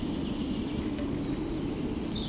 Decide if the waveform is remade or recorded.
recorded